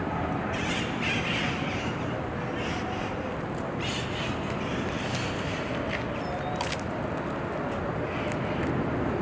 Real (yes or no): yes